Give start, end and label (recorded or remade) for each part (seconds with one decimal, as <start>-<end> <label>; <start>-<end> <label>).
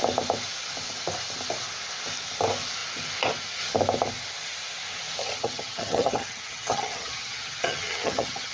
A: 0.0-5.2 recorded; 5.2-8.5 remade